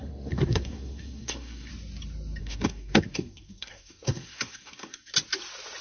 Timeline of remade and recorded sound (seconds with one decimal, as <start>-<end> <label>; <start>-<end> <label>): 0.0-1.7 remade; 1.7-2.4 recorded; 2.4-5.1 remade; 5.1-5.8 recorded